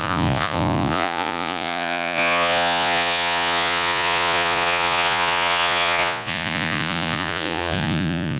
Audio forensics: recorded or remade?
remade